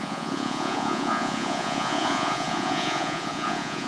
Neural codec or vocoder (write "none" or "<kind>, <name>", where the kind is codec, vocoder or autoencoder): vocoder, Vocos